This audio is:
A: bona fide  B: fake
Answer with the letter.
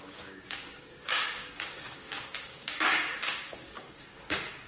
B